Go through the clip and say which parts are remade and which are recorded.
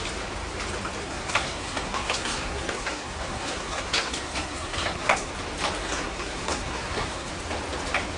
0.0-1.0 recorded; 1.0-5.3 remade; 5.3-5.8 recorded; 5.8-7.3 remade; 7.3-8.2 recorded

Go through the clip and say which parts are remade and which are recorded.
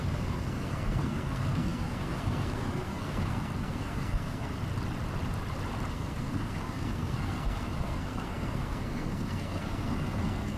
0.0-4.5 remade; 4.5-5.9 recorded; 5.9-10.6 remade